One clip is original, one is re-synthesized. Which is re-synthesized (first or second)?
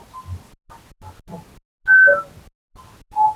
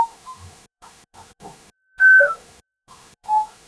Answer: second